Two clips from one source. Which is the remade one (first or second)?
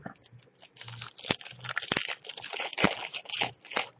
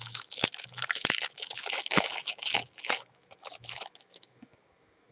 second